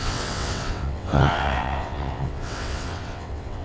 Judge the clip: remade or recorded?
remade